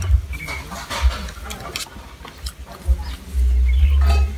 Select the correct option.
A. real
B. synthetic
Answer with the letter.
A